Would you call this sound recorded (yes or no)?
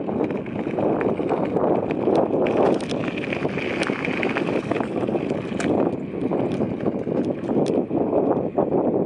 yes